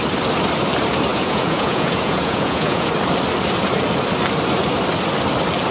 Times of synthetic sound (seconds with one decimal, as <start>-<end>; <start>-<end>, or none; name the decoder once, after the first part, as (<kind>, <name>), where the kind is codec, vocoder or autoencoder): 1.1-2.9 (vocoder, Vocos)